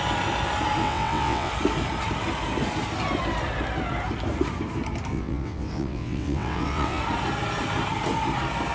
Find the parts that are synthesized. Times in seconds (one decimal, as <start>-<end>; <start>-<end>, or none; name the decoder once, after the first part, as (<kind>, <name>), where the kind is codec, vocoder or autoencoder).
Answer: 0.8-1.5 (vocoder, WaveNeXt); 5.1-7.0